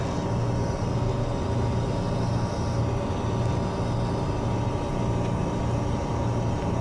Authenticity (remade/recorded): recorded